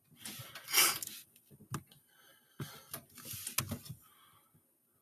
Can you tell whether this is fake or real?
real